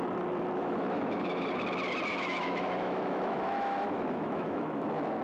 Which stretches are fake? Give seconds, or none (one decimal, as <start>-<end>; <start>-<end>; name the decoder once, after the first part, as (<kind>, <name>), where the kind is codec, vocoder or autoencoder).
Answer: 0.6-1.4 (autoencoder, DAC-VAE); 2.1-5.2